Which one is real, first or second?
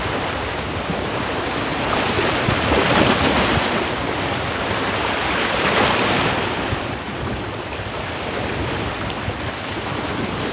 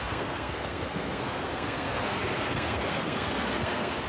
first